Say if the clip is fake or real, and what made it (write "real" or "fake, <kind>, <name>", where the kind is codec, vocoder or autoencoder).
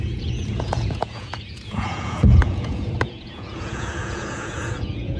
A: fake, vocoder, Vocos